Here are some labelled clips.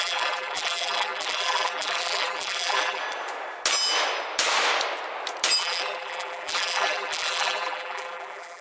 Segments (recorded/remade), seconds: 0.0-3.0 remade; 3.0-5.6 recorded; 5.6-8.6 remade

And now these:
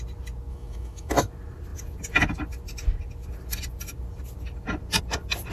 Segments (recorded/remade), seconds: 0.0-0.5 recorded; 0.5-1.1 remade; 1.1-5.5 recorded